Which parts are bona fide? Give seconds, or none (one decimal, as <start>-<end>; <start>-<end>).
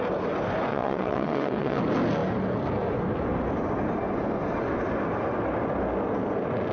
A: 0.0-0.7; 1.8-6.7